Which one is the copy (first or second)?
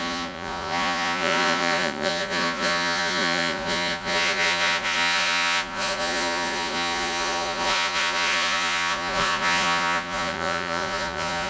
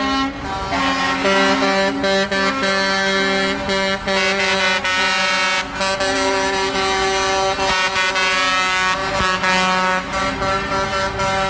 first